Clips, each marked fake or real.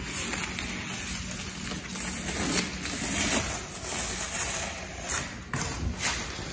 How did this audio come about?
real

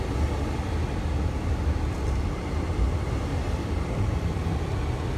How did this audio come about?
real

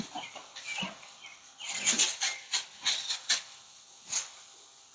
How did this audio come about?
real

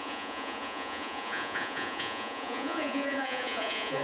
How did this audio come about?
fake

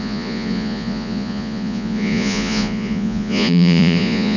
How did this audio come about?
fake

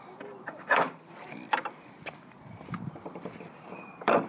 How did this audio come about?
fake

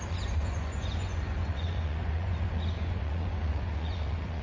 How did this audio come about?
fake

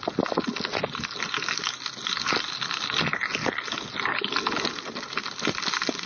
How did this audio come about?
real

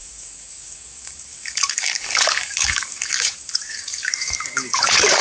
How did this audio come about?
fake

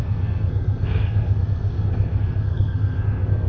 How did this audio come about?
fake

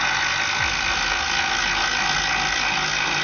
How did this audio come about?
real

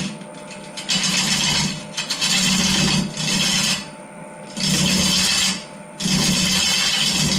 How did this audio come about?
real